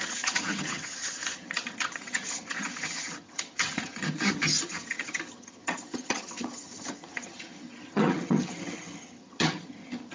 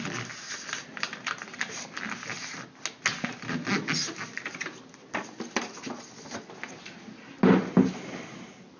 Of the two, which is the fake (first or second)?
first